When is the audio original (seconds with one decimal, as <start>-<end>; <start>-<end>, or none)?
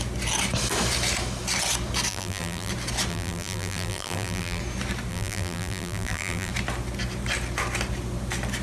0.0-2.1; 2.7-3.1; 4.6-5.1; 6.5-8.6